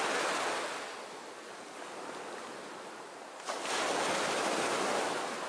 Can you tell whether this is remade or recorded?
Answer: recorded